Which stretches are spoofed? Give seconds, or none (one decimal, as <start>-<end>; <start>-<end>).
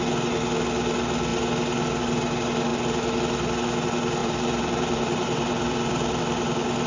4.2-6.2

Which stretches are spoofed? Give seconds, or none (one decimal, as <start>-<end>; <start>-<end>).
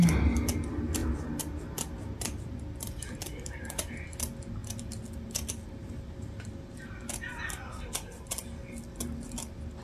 1.0-3.6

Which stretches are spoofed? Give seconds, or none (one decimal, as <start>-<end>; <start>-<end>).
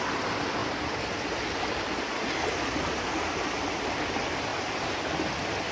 4.5-5.0